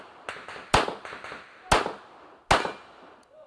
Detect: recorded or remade recorded